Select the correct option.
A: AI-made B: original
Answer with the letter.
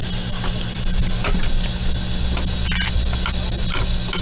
B